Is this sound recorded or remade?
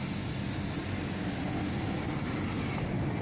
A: recorded